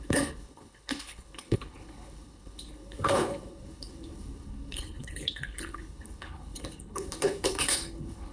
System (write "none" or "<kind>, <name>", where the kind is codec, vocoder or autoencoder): codec, HILCodec